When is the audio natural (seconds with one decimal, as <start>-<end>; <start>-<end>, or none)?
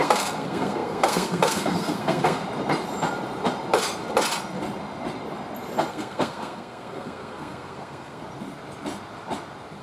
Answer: 2.4-5.9; 8.2-9.8